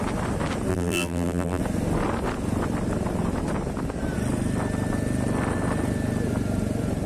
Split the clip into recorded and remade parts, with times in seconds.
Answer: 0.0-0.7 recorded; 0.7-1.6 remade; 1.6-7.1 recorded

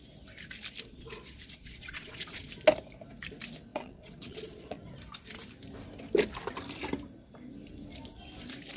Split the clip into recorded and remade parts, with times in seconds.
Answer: 0.0-0.9 recorded; 0.9-2.5 remade; 2.5-3.7 recorded; 3.7-4.8 remade; 4.8-8.8 recorded